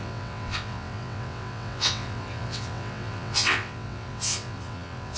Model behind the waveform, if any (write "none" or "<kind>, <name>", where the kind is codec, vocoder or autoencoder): vocoder, WaveNeXt